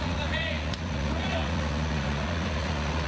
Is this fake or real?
fake